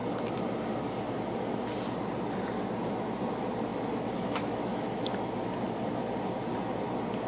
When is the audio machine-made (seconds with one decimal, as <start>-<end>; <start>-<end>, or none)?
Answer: 3.7-5.2